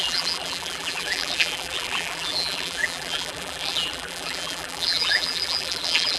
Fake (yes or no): yes